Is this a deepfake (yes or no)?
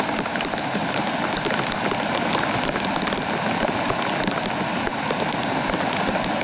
no